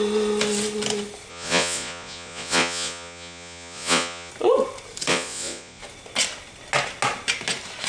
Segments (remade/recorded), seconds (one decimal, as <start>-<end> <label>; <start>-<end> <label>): 0.0-1.3 recorded; 1.3-4.3 remade; 4.3-5.1 recorded; 5.1-5.8 remade; 5.8-7.9 recorded